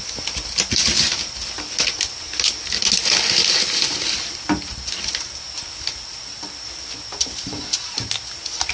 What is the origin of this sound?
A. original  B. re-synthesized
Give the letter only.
A